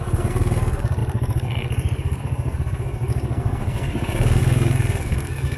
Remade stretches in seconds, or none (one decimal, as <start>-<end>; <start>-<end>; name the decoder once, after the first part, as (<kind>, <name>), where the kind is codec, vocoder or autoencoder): 0.0-5.6 (codec, SNAC)

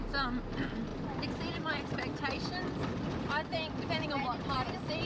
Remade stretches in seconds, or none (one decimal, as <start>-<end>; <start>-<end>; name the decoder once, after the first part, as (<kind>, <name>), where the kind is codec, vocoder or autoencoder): none

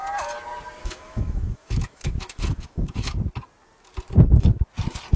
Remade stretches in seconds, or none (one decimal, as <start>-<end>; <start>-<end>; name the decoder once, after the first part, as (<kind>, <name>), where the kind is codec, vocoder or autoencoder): 0.8-3.2 (autoencoder, DAC-VAE)

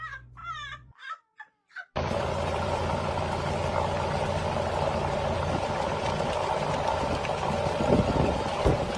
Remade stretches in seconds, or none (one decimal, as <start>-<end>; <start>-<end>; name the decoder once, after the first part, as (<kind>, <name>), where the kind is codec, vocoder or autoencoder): 0.4-3.9 (vocoder, BigVGAN v2)

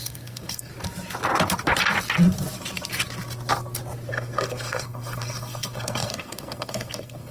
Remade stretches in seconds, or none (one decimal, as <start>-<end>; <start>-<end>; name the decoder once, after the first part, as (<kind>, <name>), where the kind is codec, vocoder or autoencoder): 0.0-0.7 (codec, SNAC); 4.1-7.3

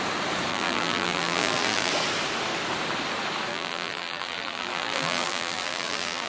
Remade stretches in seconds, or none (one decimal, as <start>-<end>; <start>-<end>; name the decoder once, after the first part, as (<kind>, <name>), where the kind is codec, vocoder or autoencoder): 0.5-1.9 (vocoder, BigVGAN v2); 3.5-6.3

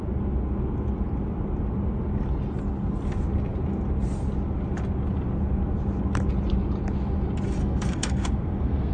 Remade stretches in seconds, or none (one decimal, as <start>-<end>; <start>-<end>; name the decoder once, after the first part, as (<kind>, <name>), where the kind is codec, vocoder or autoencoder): 7.6-8.9 (codec, SNAC)